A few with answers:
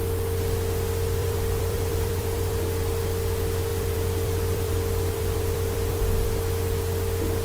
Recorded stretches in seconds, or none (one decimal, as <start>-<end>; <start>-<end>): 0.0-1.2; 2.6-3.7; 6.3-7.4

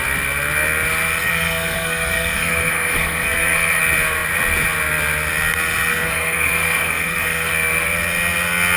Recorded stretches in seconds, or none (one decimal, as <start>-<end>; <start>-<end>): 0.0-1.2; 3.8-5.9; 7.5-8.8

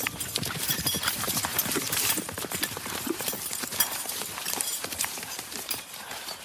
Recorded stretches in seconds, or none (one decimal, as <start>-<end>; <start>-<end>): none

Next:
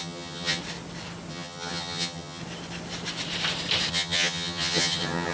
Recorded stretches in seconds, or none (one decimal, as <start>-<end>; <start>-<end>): 0.6-1.3; 2.4-3.9

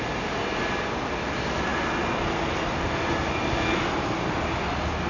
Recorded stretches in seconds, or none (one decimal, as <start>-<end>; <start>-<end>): 0.0-5.1

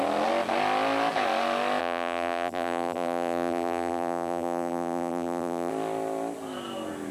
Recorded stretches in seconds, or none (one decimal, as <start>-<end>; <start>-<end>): 0.0-1.8; 5.7-7.1